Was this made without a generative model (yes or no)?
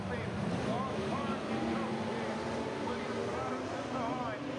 yes